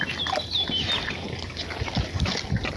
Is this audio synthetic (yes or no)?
no